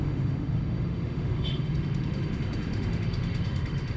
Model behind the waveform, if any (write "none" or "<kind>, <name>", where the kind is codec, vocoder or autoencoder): autoencoder, DAC-VAE